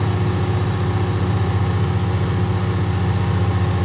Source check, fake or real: real